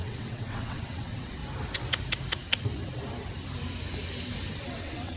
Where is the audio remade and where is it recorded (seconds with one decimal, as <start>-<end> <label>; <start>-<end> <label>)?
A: 0.0-1.4 remade; 1.4-4.5 recorded; 4.5-5.2 remade